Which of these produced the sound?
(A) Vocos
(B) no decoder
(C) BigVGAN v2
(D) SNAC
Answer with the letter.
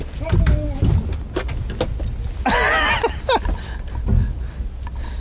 B